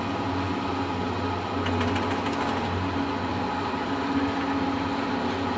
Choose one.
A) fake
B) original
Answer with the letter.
B